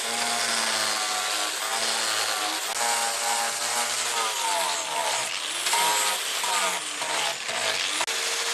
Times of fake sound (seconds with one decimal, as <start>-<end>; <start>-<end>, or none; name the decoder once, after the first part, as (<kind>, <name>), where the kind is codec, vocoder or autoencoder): none